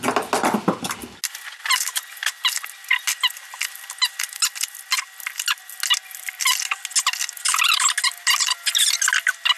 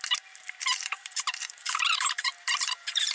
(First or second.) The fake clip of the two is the second